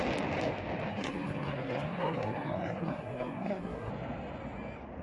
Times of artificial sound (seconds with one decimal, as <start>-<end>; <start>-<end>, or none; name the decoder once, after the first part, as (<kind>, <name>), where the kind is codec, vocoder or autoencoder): 0.9-3.9 (codec, SNAC)

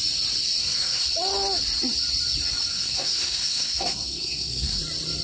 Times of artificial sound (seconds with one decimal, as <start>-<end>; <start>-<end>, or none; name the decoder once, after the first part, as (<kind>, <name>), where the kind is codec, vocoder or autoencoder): 0.6-1.1 (codec, SNAC); 2.7-4.8

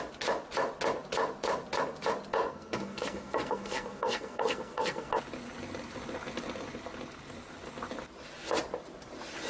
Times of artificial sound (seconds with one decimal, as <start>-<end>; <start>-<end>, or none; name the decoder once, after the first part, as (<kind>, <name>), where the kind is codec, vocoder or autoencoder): 2.5-5.1 (codec, SNAC)

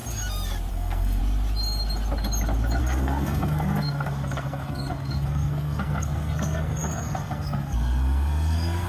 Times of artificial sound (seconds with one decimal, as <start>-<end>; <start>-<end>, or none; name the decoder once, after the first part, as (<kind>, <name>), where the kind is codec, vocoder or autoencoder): 0.7-1.2 (codec, SNAC); 2.8-8.9

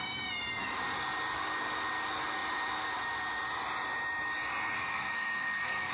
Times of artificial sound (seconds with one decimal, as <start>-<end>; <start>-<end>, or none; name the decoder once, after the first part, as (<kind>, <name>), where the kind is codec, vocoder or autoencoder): 4.8-5.9 (codec, SNAC)

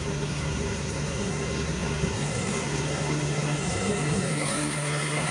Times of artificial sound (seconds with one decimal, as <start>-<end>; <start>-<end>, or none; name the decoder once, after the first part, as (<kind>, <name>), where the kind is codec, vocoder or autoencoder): 0.0-5.3 (codec, SNAC)